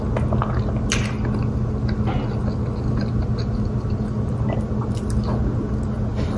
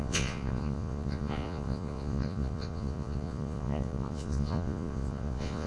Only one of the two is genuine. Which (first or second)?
first